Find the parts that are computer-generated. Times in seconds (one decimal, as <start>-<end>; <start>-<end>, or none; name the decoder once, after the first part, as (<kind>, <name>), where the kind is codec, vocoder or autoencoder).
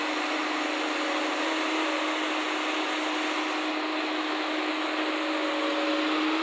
3.9-4.7 (autoencoder, DAC-VAE)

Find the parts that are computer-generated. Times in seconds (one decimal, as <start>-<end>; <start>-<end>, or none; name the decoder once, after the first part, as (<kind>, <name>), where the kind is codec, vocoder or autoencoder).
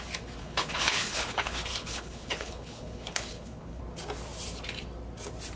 0.4-3.8 (codec, HILCodec)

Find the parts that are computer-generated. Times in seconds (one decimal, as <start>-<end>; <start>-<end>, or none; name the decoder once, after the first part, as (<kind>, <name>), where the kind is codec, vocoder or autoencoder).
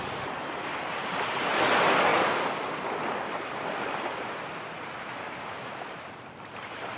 none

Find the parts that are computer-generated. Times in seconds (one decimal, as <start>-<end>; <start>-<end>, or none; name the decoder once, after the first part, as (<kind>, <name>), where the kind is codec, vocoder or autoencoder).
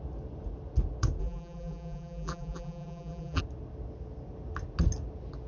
1.2-3.4 (vocoder, BigVGAN v2)